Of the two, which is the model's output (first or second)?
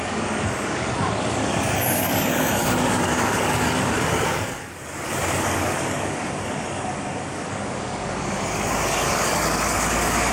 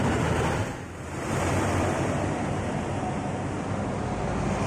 first